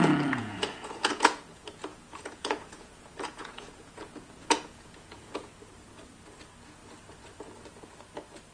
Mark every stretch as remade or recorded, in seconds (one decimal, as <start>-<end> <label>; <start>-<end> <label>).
0.0-0.4 recorded; 0.4-5.5 remade; 5.5-8.5 recorded